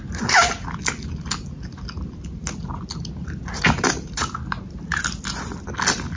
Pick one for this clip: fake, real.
real